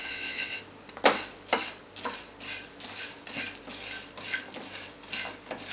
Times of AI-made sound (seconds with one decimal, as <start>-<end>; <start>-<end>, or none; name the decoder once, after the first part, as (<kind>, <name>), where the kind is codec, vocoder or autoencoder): 0.0-0.6 (vocoder, WaveNeXt)